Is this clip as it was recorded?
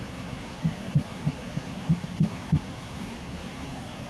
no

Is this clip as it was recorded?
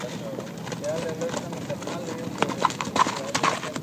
yes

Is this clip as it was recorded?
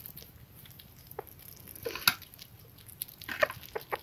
yes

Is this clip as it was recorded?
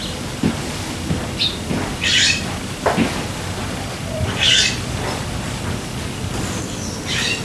yes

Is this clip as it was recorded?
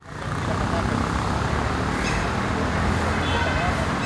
yes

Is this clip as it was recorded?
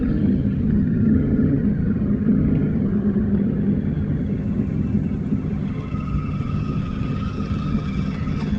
no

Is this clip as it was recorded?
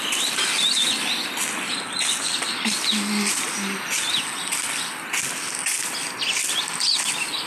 yes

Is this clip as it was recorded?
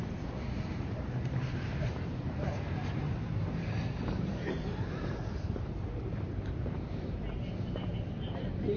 no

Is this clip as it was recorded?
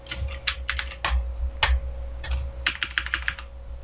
yes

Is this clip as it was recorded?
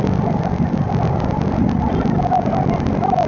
yes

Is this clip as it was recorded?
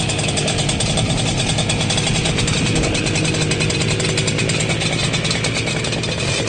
yes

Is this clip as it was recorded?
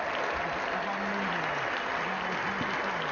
yes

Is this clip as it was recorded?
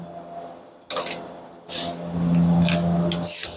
yes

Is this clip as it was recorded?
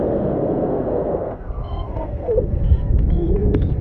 no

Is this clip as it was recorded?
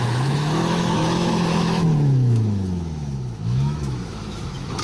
no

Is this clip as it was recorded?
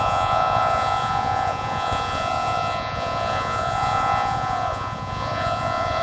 no